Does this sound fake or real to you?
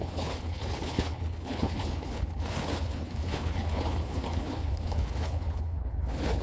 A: fake